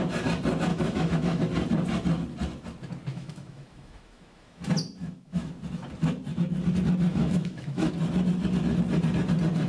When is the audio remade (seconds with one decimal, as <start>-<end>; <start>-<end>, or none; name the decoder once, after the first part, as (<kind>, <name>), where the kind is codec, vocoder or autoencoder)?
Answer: 0.7-1.4 (autoencoder, DAC-VAE); 3.1-4.6; 5.0-5.5; 7.1-7.9